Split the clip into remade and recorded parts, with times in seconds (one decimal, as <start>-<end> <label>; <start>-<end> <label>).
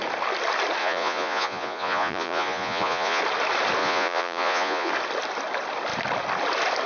0.0-0.8 recorded; 0.8-3.2 remade; 3.2-3.8 recorded; 3.8-4.9 remade; 4.9-6.9 recorded